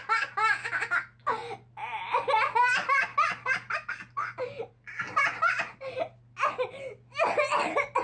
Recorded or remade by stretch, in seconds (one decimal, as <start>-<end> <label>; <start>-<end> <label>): 0.0-8.0 recorded